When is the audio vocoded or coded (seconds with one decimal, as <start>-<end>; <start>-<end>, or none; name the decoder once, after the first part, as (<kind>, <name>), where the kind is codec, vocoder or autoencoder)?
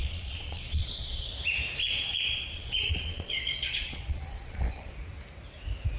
0.0-1.3 (vocoder, Vocos); 1.8-4.9